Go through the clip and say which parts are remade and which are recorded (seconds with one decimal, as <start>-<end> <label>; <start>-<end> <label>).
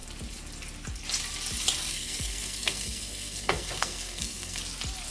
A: 0.0-1.9 recorded; 1.9-4.6 remade; 4.6-5.1 recorded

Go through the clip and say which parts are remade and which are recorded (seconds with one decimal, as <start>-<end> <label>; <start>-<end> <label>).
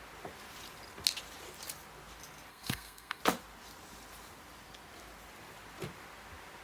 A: 0.0-2.5 recorded; 2.5-3.2 remade; 3.2-6.6 recorded